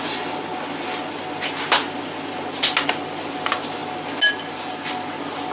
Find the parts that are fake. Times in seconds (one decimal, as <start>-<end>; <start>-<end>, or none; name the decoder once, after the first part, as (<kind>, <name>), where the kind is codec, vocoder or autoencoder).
none